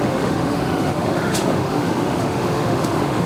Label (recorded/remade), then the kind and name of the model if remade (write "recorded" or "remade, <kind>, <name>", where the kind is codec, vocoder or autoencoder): remade, autoencoder, DAC-VAE